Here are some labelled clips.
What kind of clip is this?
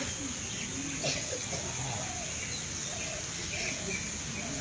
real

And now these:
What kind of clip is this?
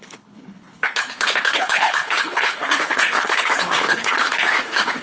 fake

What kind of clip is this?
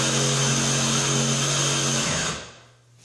real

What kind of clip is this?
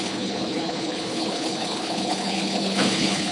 fake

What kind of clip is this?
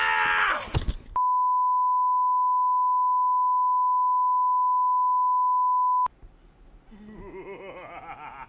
real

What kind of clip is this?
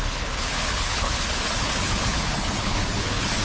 fake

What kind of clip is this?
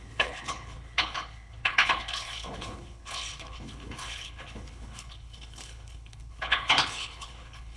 fake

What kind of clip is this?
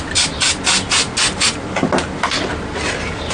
real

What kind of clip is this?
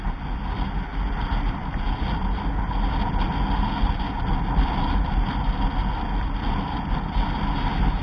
real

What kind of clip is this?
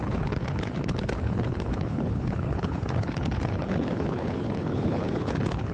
fake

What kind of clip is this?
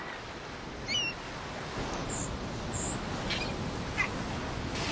real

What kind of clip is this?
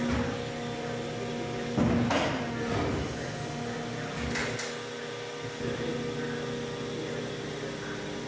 real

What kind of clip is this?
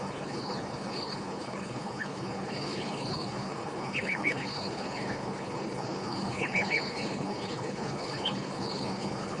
fake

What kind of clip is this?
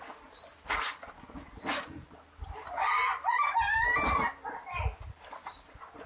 real